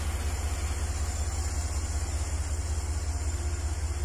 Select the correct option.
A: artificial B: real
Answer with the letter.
B